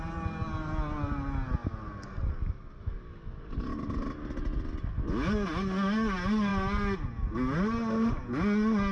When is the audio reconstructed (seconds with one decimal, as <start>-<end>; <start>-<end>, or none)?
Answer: none